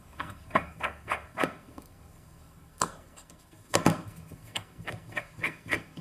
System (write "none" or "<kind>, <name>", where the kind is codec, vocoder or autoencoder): codec, SNAC